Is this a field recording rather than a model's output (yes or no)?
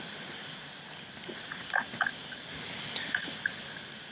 no